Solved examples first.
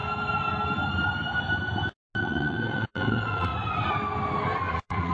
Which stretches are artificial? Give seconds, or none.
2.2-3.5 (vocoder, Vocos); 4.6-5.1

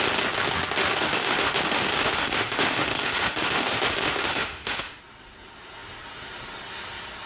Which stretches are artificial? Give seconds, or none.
0.9-5.0 (autoencoder, DAC-VAE)

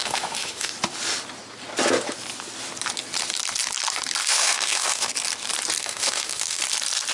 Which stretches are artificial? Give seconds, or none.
0.0-0.7 (autoencoder, DAC-VAE); 4.2-5.1; 5.8-6.6

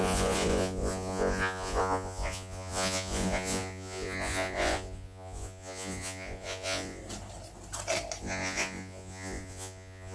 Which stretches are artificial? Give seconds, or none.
0.0-7.0 (vocoder, Vocos); 8.2-10.1